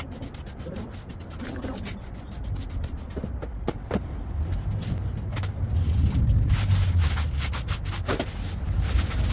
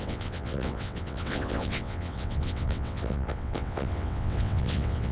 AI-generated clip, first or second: second